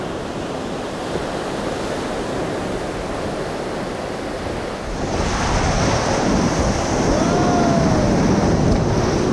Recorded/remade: recorded